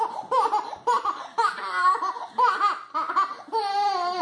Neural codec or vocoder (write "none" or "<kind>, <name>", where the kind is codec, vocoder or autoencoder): none